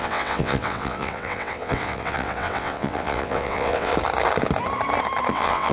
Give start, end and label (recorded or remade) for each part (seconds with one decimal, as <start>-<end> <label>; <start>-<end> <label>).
0.0-3.9 remade; 3.9-5.3 recorded; 5.3-5.7 remade